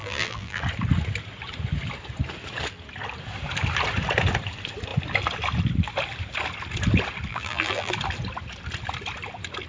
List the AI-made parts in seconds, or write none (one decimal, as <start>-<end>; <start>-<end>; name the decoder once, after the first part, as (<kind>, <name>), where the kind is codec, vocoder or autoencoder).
0.0-0.6 (vocoder, BigVGAN v2); 7.3-7.9